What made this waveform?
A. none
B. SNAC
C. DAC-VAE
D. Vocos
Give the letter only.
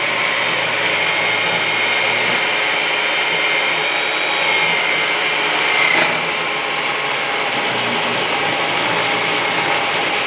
A